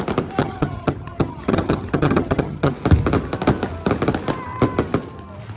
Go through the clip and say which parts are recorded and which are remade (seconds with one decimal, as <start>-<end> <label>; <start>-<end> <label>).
0.0-0.4 recorded; 0.4-2.7 remade; 2.7-5.6 recorded